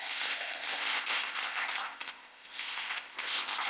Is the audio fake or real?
fake